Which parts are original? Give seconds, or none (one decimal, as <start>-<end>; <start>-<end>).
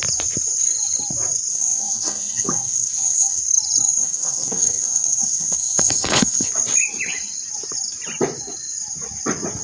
0.0-1.5; 3.4-4.0; 6.5-9.6